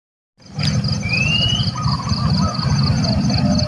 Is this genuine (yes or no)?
yes